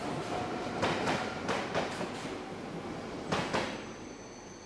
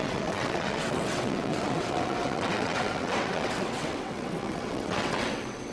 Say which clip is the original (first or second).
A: first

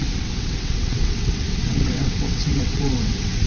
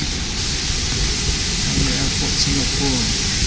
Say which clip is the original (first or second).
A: second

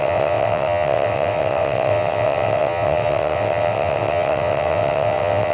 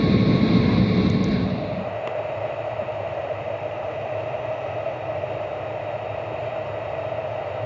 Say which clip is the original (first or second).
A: second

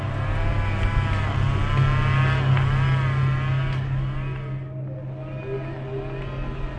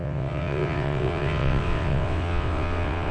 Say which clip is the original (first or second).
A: first